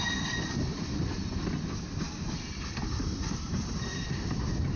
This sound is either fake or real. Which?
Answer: real